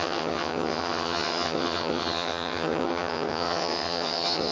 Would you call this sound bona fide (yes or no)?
no